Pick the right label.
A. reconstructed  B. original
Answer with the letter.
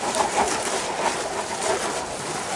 B